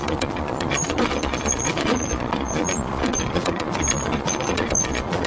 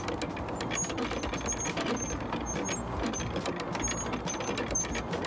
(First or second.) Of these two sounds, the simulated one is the first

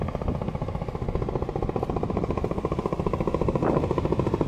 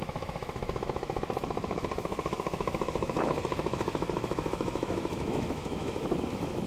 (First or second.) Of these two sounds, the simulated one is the second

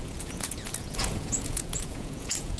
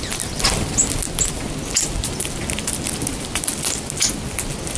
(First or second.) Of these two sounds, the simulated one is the first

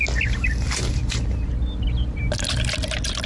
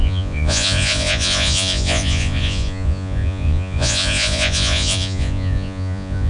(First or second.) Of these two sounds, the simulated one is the second